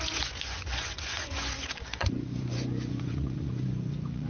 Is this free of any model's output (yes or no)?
no